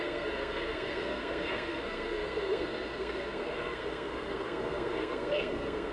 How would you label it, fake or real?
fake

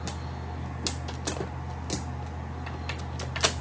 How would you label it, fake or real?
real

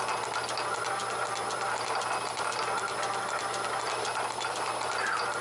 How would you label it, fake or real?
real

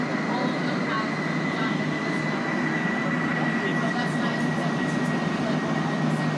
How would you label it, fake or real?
real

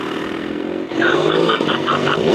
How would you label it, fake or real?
fake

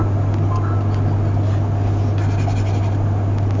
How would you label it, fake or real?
real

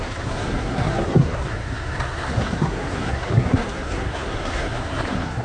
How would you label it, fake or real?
fake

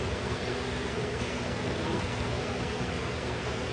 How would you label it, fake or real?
fake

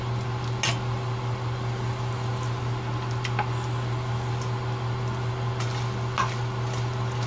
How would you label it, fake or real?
real